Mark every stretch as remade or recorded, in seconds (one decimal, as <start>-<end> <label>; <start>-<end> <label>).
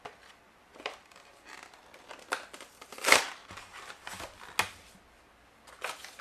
0.0-0.7 recorded; 0.7-1.8 remade; 1.8-3.4 recorded; 3.4-4.2 remade; 4.2-6.2 recorded